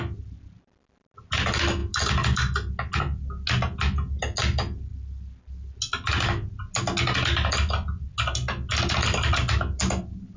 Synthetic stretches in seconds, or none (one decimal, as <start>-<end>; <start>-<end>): none